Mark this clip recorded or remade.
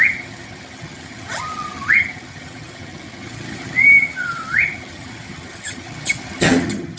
remade